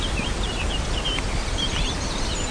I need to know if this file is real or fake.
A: real